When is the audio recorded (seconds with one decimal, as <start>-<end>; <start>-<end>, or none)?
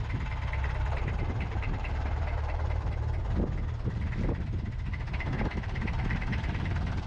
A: 3.2-5.1